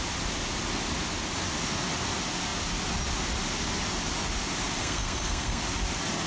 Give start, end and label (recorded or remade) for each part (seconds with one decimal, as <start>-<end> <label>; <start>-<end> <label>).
0.0-4.8 recorded; 4.8-5.6 remade; 5.6-6.3 recorded